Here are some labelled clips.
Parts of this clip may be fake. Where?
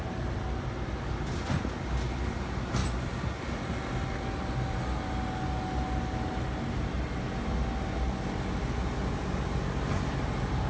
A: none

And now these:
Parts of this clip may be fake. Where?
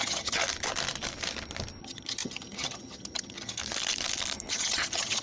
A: 0.0-0.4 (vocoder, HiFi-GAN); 1.8-3.6; 4.5-5.2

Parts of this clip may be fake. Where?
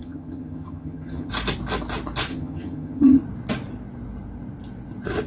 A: 0.0-1.3 (vocoder, HiFi-GAN); 2.3-3.2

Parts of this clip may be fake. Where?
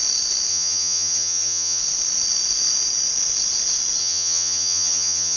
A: 0.5-1.8 (vocoder, HiFi-GAN); 4.0-5.4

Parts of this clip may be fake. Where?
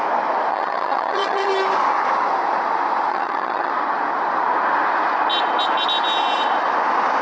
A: 0.5-1.5 (vocoder, HiFi-GAN); 3.1-3.7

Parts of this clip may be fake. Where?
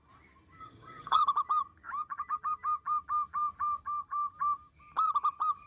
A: 0.6-1.2 (vocoder, HiFi-GAN)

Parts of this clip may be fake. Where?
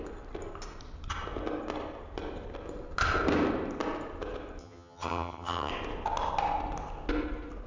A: 4.6-5.7 (vocoder, HiFi-GAN)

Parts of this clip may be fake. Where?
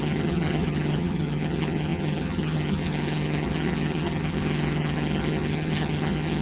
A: 0.0-6.4 (vocoder, HiFi-GAN)